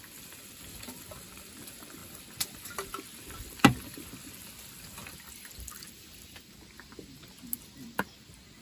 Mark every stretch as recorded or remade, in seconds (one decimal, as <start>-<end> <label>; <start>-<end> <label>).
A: 0.0-8.6 recorded